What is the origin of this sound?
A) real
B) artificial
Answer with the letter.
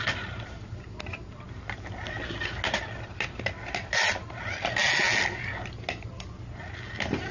A